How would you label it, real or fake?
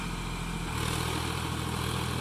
real